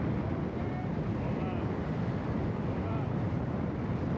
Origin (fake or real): real